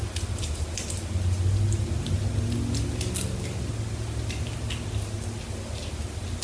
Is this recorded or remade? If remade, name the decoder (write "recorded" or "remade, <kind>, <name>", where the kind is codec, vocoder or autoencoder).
recorded